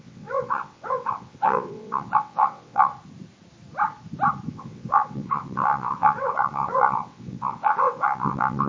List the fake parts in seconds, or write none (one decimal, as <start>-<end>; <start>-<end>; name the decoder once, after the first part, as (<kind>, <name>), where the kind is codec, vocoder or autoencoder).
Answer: 0.0-2.9 (vocoder, WaveNeXt); 4.5-8.7